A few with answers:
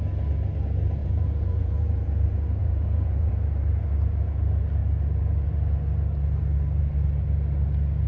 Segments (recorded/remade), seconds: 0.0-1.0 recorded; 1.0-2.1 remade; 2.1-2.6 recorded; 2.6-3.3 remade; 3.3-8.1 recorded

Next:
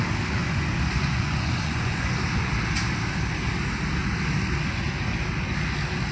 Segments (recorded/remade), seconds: 0.0-0.4 recorded; 0.4-2.5 remade; 2.5-6.1 recorded

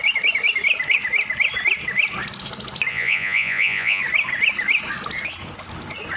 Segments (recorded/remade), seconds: 0.0-2.9 recorded; 2.9-4.0 remade; 4.0-6.2 recorded

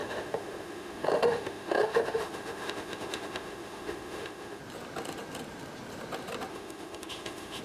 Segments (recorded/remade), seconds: 0.0-4.6 remade; 4.6-6.5 recorded; 6.5-7.6 remade

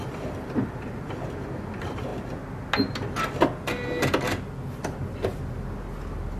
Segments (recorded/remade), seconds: 0.0-6.4 recorded

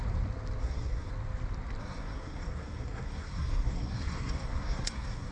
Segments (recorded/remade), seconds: 0.0-0.6 recorded; 0.6-1.1 remade; 1.1-1.8 recorded; 1.8-5.3 remade